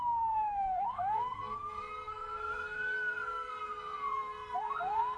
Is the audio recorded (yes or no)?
no